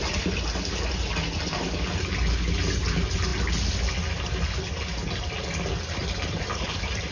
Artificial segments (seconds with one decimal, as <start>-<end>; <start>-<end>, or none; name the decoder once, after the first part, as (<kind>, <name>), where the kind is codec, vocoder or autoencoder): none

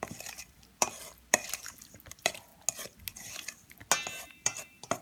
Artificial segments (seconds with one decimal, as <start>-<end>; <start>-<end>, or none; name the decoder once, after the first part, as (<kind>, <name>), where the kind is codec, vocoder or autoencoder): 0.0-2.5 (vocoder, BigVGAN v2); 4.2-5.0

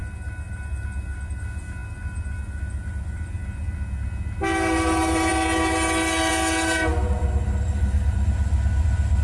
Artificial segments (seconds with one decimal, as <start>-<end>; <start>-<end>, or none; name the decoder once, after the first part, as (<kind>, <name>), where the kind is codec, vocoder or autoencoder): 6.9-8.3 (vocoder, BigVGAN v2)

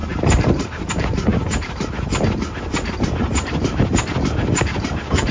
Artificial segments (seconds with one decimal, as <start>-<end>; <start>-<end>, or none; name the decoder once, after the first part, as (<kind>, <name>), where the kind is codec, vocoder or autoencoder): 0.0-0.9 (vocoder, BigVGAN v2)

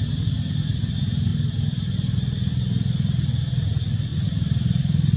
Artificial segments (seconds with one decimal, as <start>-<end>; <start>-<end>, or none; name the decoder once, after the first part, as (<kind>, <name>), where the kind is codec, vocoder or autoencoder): none

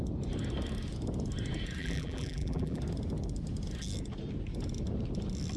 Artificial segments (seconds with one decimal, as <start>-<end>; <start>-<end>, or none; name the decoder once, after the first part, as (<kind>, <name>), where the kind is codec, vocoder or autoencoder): 1.8-2.8 (vocoder, BigVGAN v2)

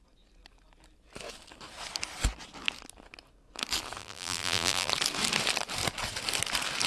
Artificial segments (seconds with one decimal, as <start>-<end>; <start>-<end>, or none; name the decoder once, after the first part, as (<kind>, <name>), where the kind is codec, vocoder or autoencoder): 4.0-4.9 (vocoder, BigVGAN v2)